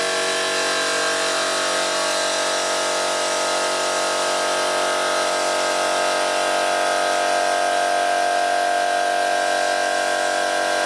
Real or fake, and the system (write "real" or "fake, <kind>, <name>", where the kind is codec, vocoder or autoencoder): real